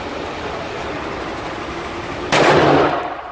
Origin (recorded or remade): recorded